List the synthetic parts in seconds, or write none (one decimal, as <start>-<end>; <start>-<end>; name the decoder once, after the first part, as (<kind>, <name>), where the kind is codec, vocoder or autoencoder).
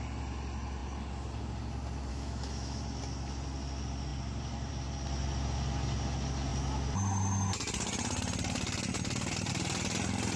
2.1-2.8 (autoencoder, DAC-VAE)